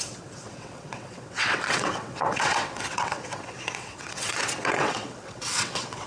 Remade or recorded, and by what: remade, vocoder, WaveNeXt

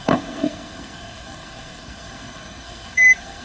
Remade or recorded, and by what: remade, codec, SNAC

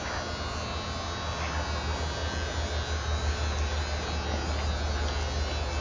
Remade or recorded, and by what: recorded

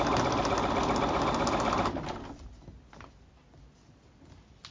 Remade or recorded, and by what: recorded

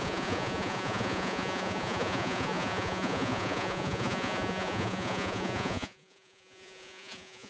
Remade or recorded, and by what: remade, vocoder, Vocos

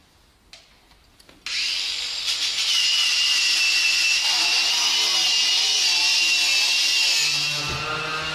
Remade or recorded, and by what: recorded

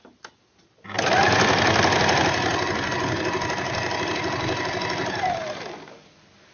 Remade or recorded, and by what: recorded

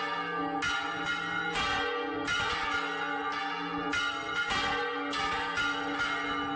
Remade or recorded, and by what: recorded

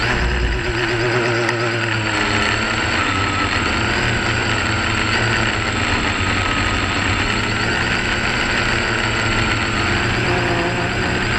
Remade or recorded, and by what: recorded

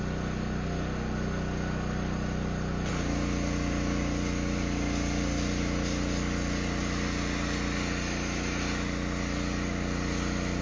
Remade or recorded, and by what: recorded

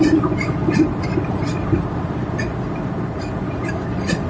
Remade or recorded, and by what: recorded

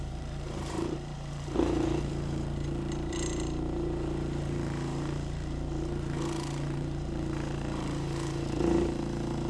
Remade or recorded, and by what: remade, vocoder, BigVGAN v2